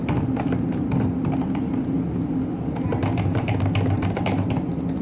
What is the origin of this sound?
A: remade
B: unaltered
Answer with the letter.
B